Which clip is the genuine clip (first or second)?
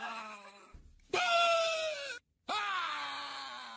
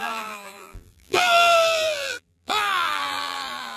first